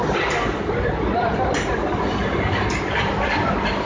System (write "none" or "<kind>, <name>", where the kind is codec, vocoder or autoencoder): none